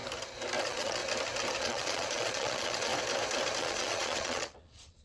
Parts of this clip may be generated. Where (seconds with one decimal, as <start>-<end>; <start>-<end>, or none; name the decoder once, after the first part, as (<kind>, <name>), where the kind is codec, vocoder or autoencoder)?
0.6-1.0 (vocoder, Vocos); 1.6-2.9; 3.6-5.0